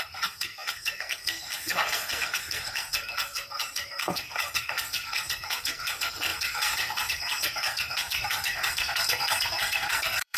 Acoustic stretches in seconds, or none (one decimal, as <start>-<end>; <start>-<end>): none